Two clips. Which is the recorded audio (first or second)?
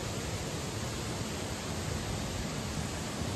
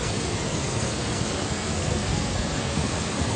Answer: first